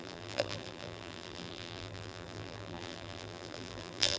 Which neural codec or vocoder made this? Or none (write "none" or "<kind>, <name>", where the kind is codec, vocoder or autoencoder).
vocoder, BigVGAN v2